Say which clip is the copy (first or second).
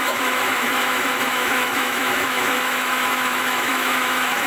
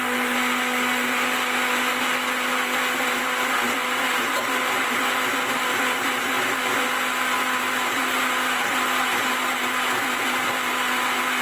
first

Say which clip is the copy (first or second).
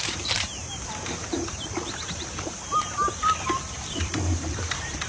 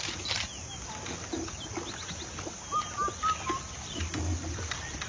first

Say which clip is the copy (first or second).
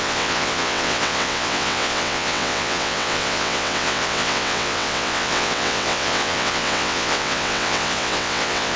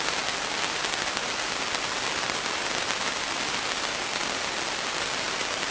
first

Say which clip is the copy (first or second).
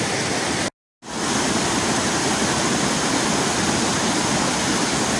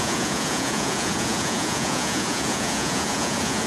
second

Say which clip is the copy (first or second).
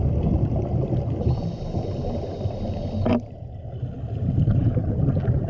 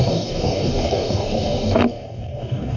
second